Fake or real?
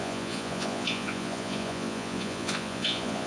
fake